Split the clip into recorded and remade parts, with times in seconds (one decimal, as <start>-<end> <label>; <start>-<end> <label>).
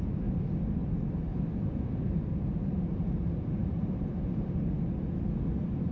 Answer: 0.0-1.3 recorded; 1.3-4.8 remade; 4.8-5.9 recorded